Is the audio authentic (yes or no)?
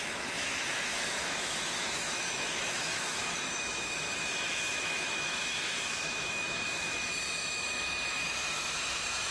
no